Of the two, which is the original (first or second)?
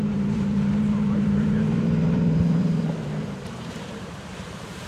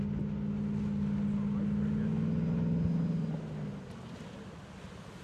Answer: second